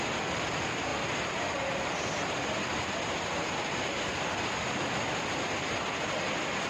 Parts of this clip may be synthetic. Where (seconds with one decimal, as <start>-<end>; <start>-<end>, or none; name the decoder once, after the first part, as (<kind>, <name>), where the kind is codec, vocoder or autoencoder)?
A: 0.0-0.9 (vocoder, BigVGAN v2); 4.4-6.7